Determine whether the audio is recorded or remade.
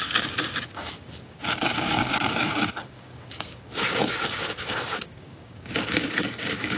remade